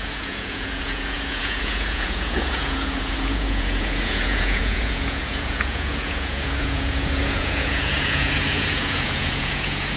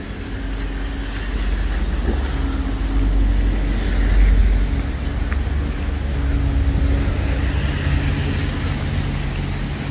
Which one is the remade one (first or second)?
first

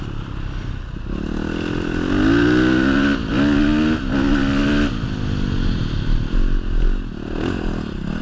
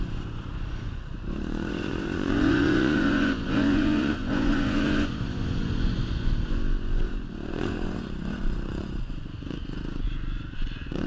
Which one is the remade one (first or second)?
second